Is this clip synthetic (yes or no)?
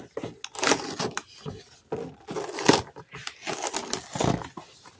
no